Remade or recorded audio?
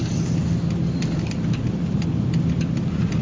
recorded